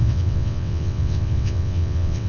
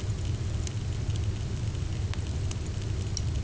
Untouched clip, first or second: second